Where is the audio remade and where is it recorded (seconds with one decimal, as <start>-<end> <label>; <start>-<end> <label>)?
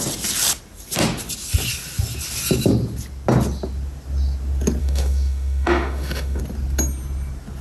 0.0-4.8 recorded; 4.8-6.4 remade; 6.4-7.6 recorded